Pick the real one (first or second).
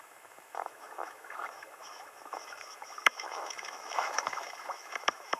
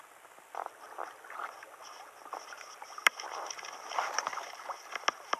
second